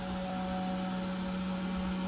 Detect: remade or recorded recorded